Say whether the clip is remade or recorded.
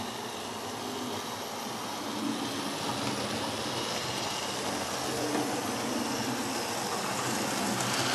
recorded